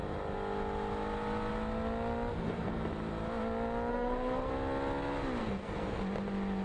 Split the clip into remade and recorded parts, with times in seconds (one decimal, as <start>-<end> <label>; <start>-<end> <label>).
0.0-2.3 recorded; 2.3-2.8 remade; 2.8-3.9 recorded; 3.9-4.5 remade; 4.5-5.4 recorded; 5.4-6.0 remade; 6.0-6.6 recorded